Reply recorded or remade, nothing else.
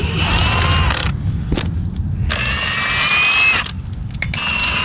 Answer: recorded